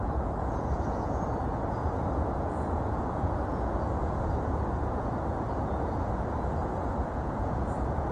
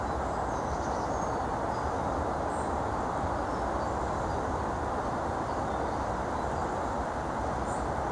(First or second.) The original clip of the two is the second